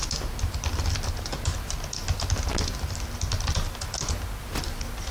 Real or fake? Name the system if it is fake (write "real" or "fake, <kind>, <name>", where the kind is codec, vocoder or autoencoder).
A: real